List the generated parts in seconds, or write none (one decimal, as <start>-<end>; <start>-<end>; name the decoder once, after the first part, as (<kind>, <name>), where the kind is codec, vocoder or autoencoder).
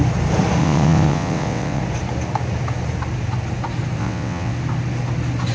0.6-1.8 (vocoder, WaveNeXt); 4.0-4.5